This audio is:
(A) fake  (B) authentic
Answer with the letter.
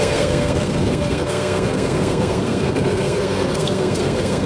A